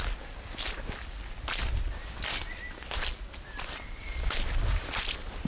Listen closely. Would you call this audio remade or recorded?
recorded